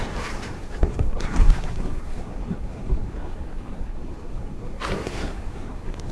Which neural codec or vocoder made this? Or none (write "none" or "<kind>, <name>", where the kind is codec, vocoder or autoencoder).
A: codec, SNAC